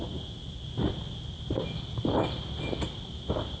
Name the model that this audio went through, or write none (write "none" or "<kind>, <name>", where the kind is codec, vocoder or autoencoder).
none